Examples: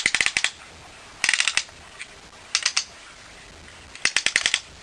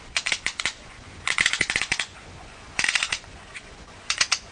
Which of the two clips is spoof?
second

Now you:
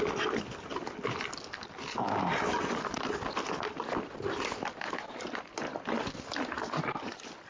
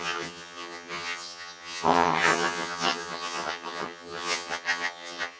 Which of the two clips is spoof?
second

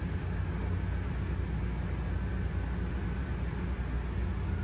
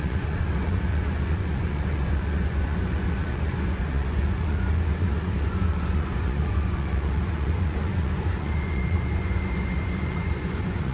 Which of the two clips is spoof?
second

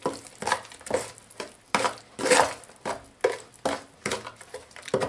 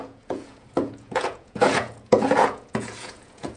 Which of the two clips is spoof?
second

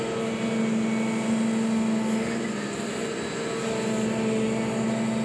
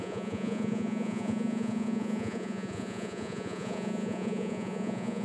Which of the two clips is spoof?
second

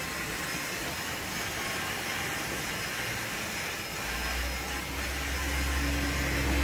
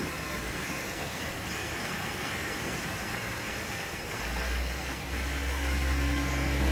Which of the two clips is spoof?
second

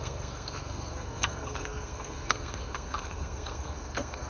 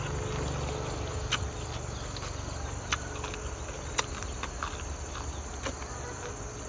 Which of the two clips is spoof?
first